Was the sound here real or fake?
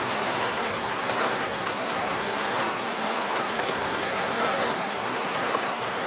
fake